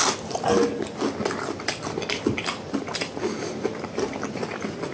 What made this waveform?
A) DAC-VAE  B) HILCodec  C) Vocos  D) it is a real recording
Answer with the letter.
D